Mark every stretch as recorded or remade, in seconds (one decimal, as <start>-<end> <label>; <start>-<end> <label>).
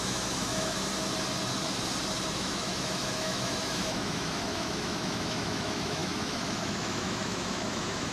0.0-0.9 remade; 0.9-2.3 recorded; 2.3-8.1 remade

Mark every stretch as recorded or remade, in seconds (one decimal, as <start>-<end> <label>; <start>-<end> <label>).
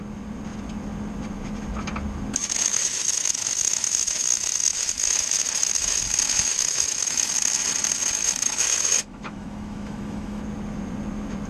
0.0-2.7 recorded; 2.7-6.0 remade; 6.0-6.5 recorded; 6.5-7.3 remade; 7.3-8.2 recorded; 8.2-10.4 remade; 10.4-11.5 recorded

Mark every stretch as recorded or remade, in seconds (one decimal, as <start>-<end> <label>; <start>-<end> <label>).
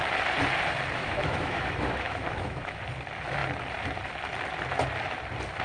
0.0-1.0 recorded; 1.0-2.8 remade; 2.8-5.6 recorded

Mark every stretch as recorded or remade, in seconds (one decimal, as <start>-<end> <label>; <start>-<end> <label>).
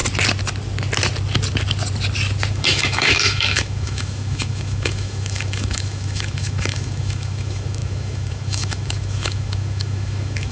0.0-2.5 recorded; 2.5-10.5 remade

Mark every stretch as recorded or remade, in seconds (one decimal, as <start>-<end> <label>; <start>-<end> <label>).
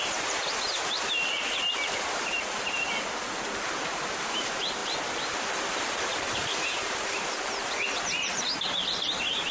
0.0-9.5 recorded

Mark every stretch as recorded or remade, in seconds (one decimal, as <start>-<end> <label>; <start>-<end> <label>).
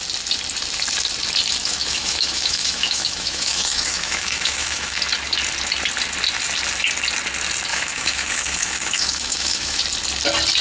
0.0-1.6 recorded; 1.6-5.0 remade; 5.0-7.7 recorded; 7.7-9.8 remade; 9.8-10.6 recorded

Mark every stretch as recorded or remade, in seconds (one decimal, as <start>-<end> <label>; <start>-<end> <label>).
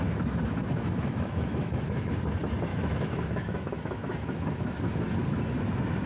0.0-0.6 recorded; 0.6-2.1 remade; 2.1-2.7 recorded; 2.7-4.9 remade; 4.9-6.1 recorded